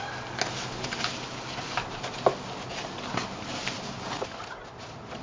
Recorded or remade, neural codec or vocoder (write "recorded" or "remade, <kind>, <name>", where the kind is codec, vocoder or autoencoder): recorded